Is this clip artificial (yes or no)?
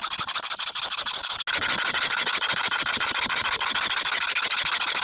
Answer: no